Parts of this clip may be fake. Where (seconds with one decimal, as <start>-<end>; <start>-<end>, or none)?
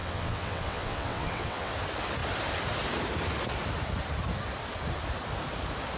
0.0-1.7